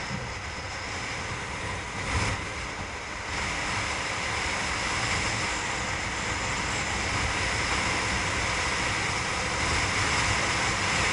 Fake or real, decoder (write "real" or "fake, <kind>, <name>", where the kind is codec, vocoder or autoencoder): real